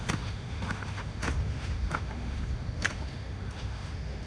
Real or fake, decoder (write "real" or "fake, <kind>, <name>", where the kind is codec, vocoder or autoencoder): fake, autoencoder, DAC-VAE